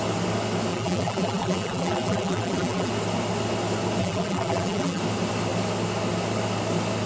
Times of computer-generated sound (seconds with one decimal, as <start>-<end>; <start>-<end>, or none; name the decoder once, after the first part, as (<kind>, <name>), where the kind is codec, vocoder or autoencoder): 0.7-2.9 (vocoder, BigVGAN v2); 4.0-5.0